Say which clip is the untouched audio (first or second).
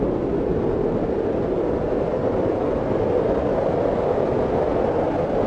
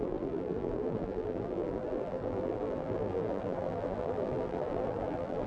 first